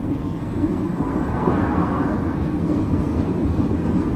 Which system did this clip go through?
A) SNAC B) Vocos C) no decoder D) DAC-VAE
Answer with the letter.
A